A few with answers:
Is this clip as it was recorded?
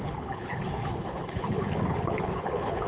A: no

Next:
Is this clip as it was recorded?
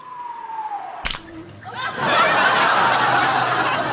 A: yes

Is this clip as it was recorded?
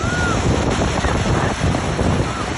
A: yes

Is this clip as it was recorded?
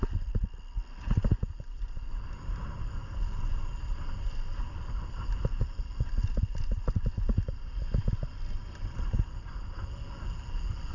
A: yes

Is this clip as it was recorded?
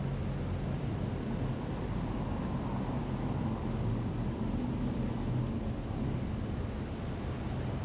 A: yes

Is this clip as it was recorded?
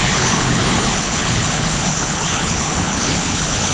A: no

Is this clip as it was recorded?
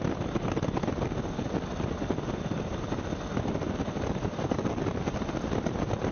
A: yes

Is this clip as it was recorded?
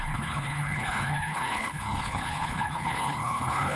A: no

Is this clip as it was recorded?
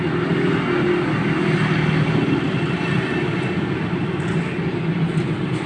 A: yes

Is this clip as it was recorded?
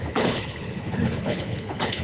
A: no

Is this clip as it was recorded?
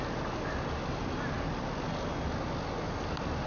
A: yes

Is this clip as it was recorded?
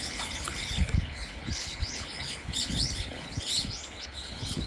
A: no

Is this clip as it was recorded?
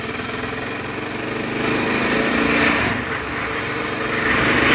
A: yes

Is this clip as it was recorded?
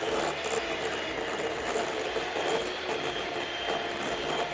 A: yes